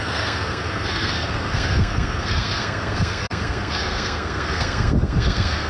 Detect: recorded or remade remade